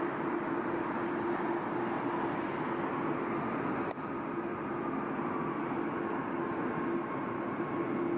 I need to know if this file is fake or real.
real